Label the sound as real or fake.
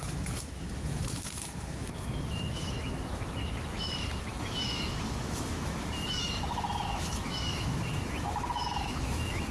fake